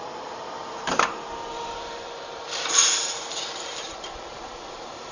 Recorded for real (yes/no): no